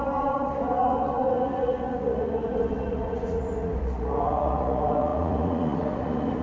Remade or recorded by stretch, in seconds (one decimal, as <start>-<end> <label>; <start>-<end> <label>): 0.0-6.4 remade